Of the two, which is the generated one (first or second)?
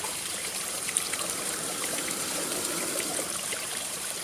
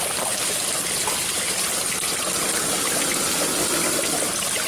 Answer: first